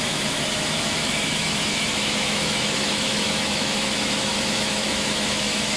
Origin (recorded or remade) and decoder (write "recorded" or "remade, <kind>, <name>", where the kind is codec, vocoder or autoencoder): remade, autoencoder, DAC-VAE